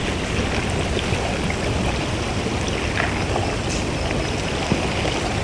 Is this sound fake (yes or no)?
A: no